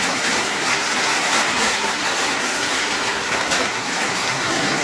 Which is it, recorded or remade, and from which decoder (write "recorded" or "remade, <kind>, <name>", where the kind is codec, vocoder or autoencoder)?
remade, codec, SNAC